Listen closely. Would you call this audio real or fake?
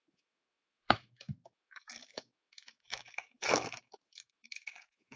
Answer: fake